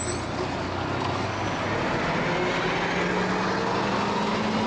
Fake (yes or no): no